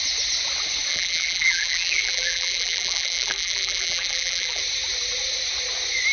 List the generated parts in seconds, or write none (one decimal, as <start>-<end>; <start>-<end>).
0.9-4.6